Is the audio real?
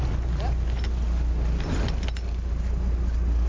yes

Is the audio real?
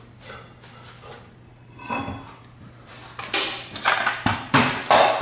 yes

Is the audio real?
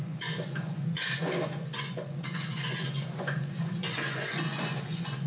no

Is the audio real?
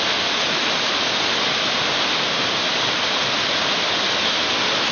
yes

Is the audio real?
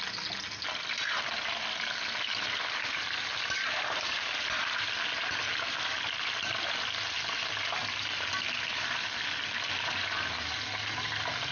yes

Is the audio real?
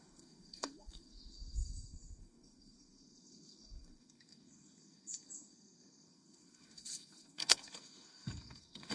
no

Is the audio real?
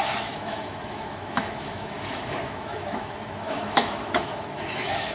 no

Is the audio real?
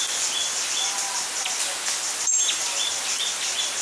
yes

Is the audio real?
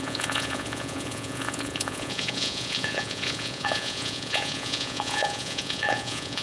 no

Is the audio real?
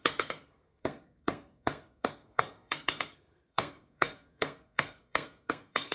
no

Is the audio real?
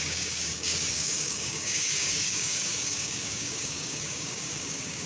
no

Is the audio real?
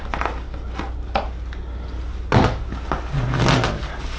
yes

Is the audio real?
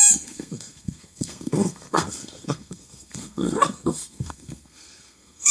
no